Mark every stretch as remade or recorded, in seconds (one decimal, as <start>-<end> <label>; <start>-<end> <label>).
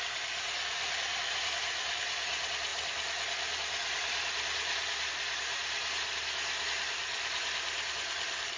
0.0-8.6 recorded